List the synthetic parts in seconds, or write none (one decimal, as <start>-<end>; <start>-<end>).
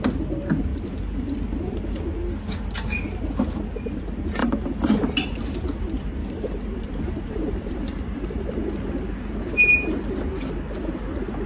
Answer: 4.4-5.0; 6.2-8.4